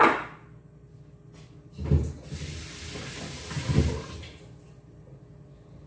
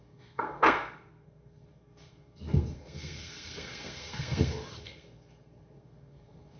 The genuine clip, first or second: first